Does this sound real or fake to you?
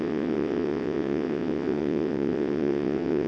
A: fake